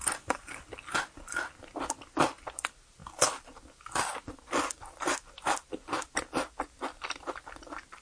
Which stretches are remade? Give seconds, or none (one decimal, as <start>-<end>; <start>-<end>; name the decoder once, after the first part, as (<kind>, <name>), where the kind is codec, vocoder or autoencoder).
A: none